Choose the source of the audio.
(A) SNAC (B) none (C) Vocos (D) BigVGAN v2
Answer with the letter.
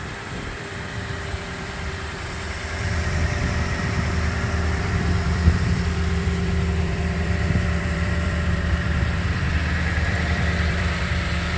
D